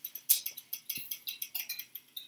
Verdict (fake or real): real